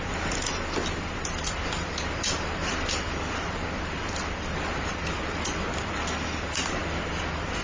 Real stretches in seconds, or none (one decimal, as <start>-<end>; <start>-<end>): 6.8-7.6